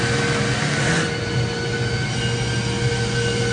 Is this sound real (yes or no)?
yes